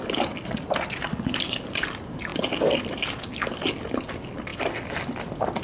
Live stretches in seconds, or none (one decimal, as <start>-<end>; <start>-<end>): 0.0-5.6